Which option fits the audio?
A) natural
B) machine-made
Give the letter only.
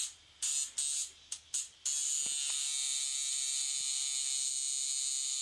A